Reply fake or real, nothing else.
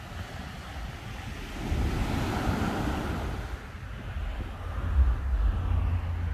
real